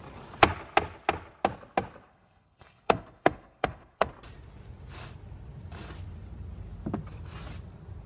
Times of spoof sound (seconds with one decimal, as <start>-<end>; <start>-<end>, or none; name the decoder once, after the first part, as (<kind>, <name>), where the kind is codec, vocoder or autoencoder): 2.1-4.1 (codec, SNAC)